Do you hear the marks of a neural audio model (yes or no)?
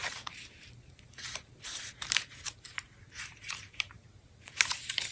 yes